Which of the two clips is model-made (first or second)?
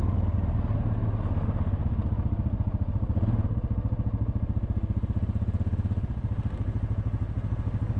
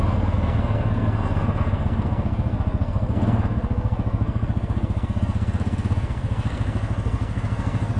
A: second